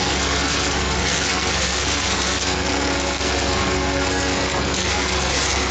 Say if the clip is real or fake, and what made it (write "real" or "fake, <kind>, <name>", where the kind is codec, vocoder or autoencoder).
fake, codec, SNAC